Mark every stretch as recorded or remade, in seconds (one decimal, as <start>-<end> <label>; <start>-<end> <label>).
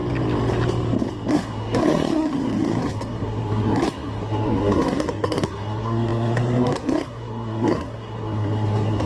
0.0-1.3 recorded; 1.3-9.1 remade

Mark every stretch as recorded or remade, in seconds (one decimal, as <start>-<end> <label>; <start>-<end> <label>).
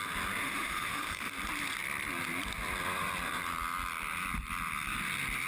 0.0-0.4 recorded; 0.4-1.3 remade; 1.3-5.5 recorded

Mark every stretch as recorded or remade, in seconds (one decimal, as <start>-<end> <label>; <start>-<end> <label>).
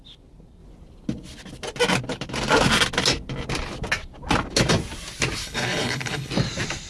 0.0-5.4 recorded; 5.4-6.3 remade; 6.3-6.9 recorded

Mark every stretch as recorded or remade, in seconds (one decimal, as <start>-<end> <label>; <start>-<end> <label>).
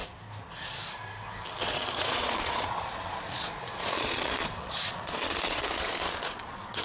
0.0-1.6 recorded; 1.6-6.8 remade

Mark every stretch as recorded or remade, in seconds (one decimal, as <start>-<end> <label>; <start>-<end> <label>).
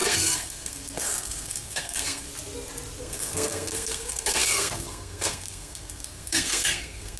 0.0-2.3 remade; 2.3-3.0 recorded; 3.0-7.2 remade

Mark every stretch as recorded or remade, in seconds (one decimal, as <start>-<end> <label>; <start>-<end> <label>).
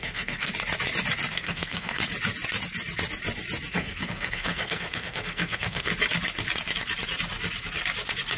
0.0-0.5 remade; 0.5-1.3 recorded; 1.3-2.0 remade; 2.0-3.7 recorded; 3.7-5.9 remade; 5.9-8.4 recorded